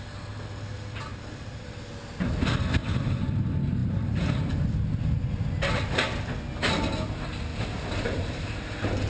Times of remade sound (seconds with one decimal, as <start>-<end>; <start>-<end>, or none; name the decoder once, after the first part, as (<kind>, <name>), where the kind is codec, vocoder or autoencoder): 1.1-1.7 (vocoder, BigVGAN v2); 2.8-3.4; 3.8-5.5; 7.5-9.1